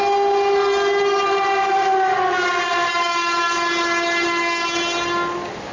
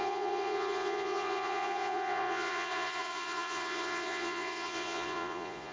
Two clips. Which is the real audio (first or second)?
first